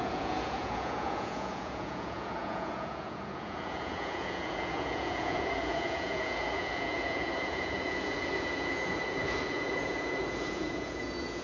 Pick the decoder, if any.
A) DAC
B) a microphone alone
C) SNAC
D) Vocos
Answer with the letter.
D